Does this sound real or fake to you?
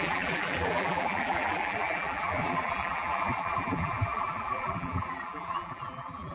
fake